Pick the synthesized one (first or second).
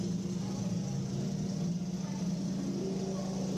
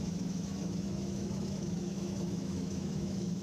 second